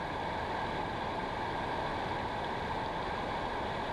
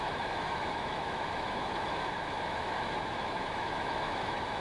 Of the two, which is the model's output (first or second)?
second